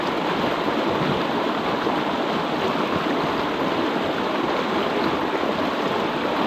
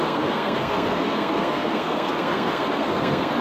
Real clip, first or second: first